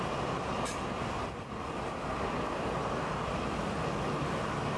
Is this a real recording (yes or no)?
yes